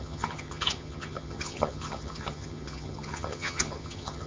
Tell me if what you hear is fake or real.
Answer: fake